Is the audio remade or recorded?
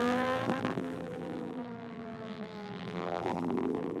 remade